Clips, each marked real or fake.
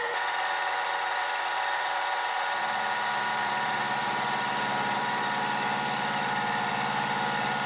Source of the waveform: fake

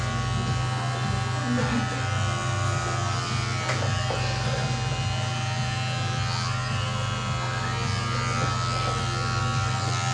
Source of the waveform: real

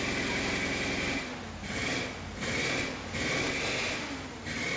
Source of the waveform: real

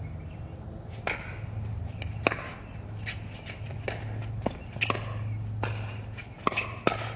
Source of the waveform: real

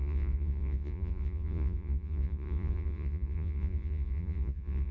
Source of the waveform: fake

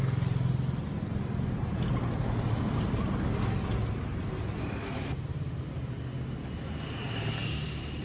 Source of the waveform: real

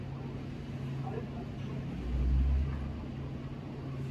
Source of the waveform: real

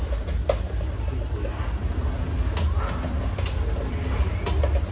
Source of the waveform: real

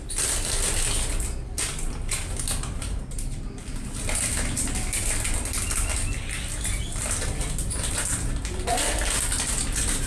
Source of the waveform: real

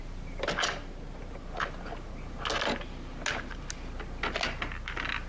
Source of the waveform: real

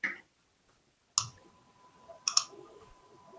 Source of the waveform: real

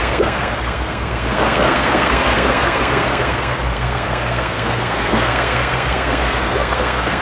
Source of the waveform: fake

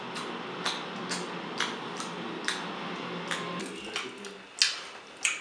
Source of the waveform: real